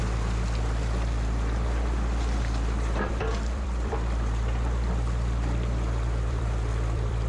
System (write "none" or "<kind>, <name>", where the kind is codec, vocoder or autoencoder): vocoder, BigVGAN v2